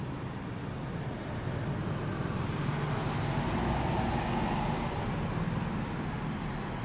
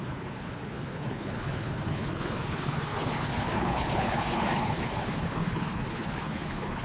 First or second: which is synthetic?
second